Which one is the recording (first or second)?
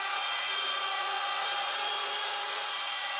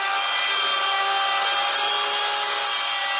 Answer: second